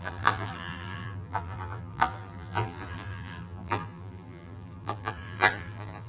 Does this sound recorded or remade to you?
remade